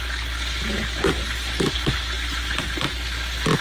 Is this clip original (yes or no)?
yes